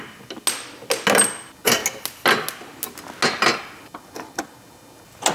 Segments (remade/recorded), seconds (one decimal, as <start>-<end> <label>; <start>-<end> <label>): 0.0-5.3 recorded